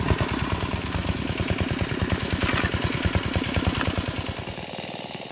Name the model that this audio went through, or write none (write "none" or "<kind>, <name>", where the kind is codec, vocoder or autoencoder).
none